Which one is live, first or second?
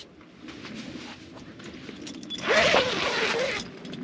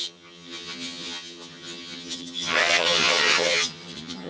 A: first